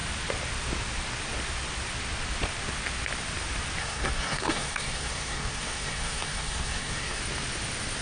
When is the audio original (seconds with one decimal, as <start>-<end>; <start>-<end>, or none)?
0.0-3.8; 7.2-8.0

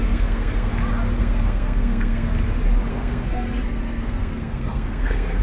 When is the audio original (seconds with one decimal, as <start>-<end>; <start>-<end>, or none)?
0.7-1.2; 2.3-2.9

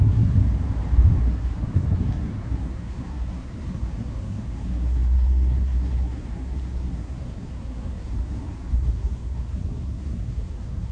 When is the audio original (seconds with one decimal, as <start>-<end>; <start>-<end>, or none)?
0.4-1.2

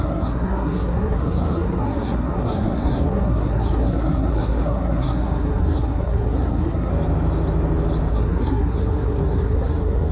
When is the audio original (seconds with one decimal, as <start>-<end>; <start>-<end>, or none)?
6.9-8.1

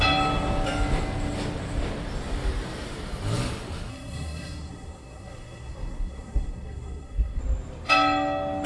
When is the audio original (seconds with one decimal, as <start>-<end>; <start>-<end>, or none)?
0.0-3.9; 7.4-8.7

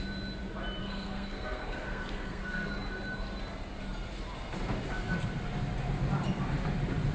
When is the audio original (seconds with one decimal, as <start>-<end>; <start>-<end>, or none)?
0.0-0.8; 2.7-7.1

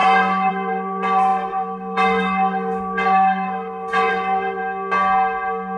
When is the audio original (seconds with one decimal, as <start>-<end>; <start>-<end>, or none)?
4.6-5.8

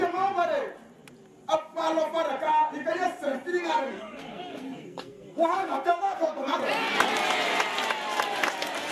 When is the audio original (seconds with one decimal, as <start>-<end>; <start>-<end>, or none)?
0.0-3.5; 6.6-8.9